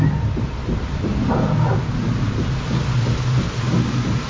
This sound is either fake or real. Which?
real